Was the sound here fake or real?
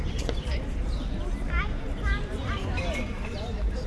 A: fake